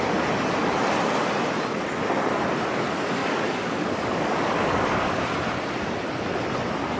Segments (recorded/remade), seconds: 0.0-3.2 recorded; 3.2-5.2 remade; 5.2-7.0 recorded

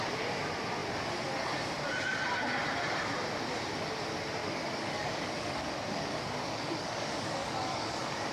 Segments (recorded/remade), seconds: 0.0-4.4 recorded; 4.4-8.3 remade

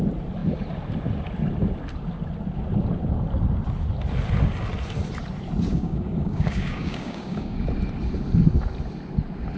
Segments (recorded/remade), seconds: 0.0-5.7 recorded; 5.7-7.6 remade; 7.6-9.6 recorded

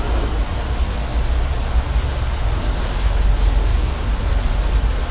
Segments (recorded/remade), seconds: 0.0-3.7 recorded; 3.7-4.2 remade; 4.2-5.1 recorded

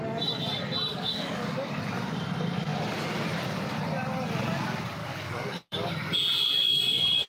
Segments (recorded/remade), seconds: 0.0-0.9 recorded; 0.9-1.7 remade; 1.7-5.0 recorded; 5.0-5.9 remade; 5.9-7.3 recorded